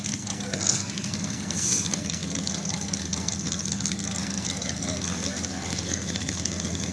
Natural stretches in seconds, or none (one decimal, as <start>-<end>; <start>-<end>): none